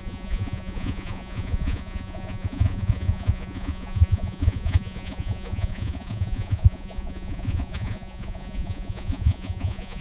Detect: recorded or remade remade